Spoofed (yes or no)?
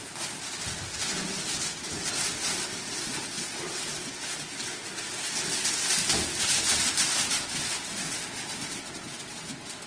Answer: no